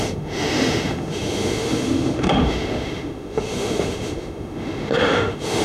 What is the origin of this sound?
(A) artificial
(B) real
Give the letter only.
A